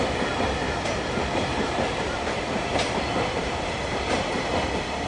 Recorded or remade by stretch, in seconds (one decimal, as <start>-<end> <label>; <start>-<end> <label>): 0.0-1.5 recorded; 1.5-4.6 remade; 4.6-5.1 recorded